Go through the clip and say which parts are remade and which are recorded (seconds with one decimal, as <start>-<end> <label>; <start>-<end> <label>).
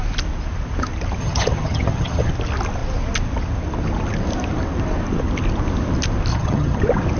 0.0-1.2 recorded; 1.2-2.3 remade; 2.3-6.3 recorded; 6.3-6.8 remade; 6.8-7.2 recorded